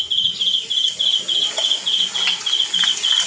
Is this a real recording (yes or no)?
yes